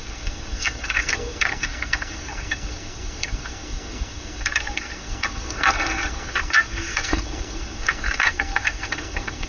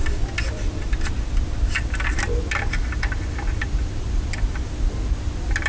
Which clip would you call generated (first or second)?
first